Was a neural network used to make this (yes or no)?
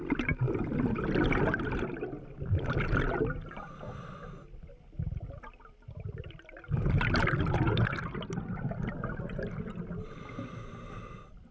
no